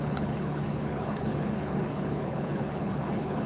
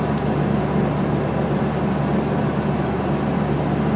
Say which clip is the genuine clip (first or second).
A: second